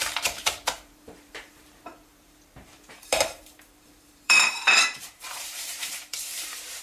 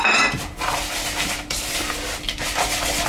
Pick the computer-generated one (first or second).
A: first